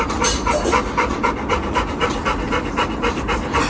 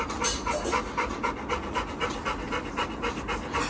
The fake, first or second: first